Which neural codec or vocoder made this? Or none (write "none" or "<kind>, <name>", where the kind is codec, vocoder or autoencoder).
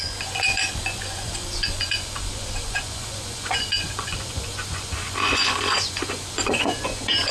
vocoder, Vocos